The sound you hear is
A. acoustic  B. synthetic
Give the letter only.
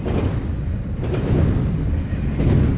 A